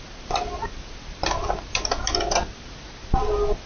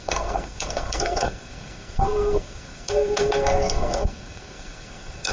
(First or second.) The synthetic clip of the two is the second